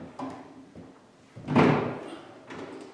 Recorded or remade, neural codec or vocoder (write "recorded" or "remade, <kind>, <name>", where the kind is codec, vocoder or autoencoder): recorded